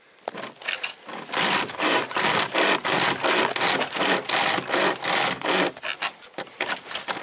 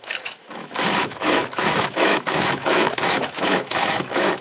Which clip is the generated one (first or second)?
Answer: second